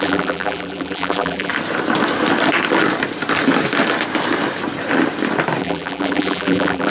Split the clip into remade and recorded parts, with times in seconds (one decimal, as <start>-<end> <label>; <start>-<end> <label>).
0.0-1.5 remade; 1.5-5.6 recorded; 5.6-6.9 remade